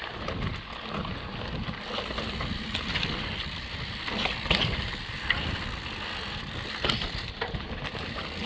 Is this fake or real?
real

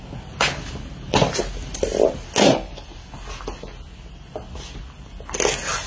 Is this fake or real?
real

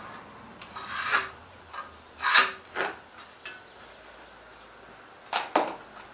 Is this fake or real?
real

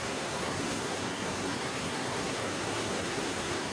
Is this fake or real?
fake